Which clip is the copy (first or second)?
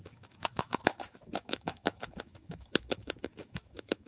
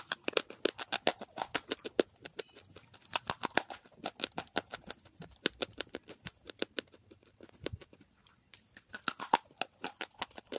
first